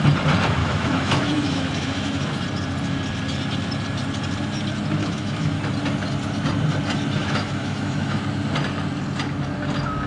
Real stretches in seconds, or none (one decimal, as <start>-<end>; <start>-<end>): 0.0-0.6; 2.4-5.0; 5.6-7.2; 8.2-10.1